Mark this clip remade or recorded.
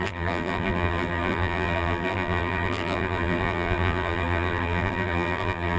remade